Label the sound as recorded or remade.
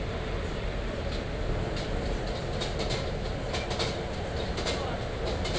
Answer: recorded